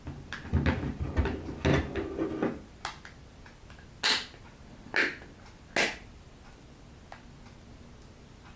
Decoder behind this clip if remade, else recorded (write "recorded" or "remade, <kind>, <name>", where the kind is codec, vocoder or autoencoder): recorded